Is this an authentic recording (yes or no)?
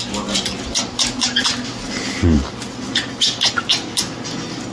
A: yes